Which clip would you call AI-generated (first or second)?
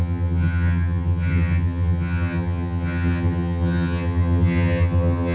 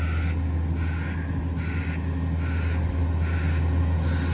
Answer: first